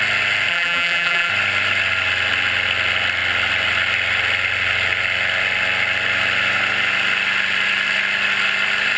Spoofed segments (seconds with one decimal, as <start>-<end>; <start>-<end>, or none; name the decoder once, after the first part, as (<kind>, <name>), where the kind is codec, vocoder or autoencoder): 0.5-1.3 (vocoder, BigVGAN v2)